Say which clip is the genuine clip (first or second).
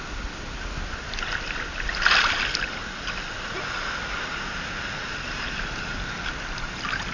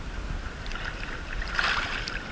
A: first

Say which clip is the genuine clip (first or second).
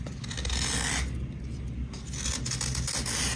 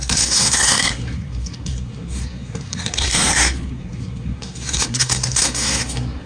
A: first